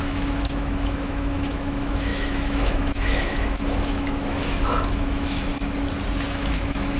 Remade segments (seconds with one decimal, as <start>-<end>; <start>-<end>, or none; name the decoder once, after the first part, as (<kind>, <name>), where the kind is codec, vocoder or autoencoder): 0.0-5.5 (autoencoder, DAC-VAE); 6.5-7.0